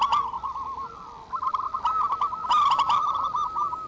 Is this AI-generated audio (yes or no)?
no